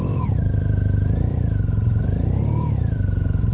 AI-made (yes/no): yes